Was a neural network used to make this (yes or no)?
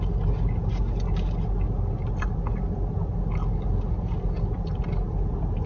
no